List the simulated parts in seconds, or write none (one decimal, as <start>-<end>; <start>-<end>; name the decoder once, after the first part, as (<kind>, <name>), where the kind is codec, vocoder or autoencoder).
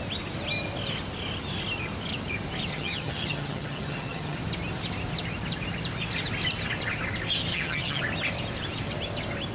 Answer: 2.7-4.4 (vocoder, HiFi-GAN); 7.5-8.0